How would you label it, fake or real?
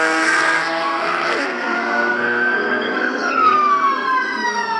fake